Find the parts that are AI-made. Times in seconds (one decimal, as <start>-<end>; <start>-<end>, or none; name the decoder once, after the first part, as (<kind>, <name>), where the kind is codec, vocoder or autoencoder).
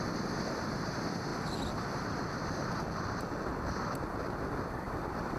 none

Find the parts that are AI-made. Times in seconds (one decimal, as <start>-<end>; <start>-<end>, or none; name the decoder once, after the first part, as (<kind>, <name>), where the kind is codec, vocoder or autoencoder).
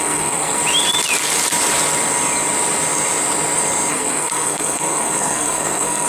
0.0-0.6 (codec, SNAC); 3.9-6.1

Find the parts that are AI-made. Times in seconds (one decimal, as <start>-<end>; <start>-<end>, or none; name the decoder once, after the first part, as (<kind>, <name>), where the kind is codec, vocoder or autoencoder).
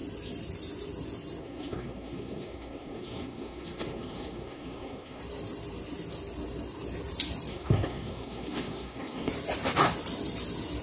1.4-5.2 (codec, SNAC); 7.5-9.3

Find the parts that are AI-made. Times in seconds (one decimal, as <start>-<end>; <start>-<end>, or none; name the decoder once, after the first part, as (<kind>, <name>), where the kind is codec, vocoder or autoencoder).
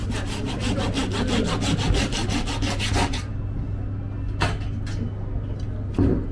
none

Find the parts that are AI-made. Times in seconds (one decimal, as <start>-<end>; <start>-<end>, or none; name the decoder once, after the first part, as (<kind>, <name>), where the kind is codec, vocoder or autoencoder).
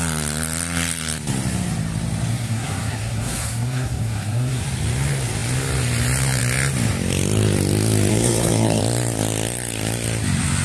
2.3-4.6 (codec, SNAC); 8.1-8.8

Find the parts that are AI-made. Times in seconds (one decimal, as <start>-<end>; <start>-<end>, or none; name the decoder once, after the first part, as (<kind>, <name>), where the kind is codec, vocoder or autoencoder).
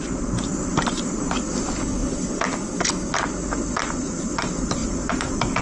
none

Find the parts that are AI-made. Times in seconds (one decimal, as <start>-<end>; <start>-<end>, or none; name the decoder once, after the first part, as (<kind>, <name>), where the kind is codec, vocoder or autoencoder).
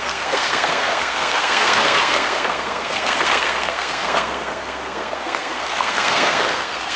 0.0-7.0 (codec, SNAC)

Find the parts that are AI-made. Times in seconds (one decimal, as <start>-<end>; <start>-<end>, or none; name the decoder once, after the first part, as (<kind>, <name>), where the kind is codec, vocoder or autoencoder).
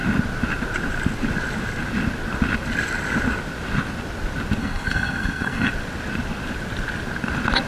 4.6-5.7 (codec, SNAC)